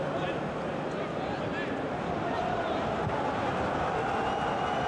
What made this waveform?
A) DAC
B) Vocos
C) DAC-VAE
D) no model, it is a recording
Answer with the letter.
D